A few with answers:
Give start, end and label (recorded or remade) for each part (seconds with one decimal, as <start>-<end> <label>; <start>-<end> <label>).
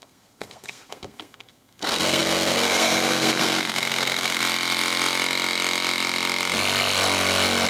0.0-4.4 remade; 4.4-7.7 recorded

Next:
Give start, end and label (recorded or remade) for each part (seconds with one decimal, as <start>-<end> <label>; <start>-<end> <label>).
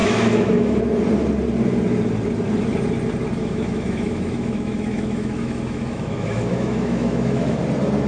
0.0-0.8 remade; 0.8-3.4 recorded; 3.4-7.6 remade; 7.6-8.1 recorded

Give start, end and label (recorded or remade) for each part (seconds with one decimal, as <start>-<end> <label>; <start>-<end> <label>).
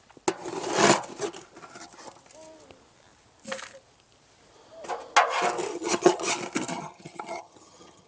0.0-5.7 recorded; 5.7-6.3 remade; 6.3-6.7 recorded; 6.7-8.1 remade